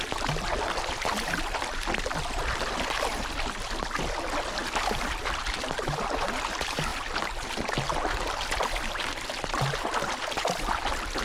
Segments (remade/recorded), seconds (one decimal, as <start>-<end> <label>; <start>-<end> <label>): 0.0-11.2 recorded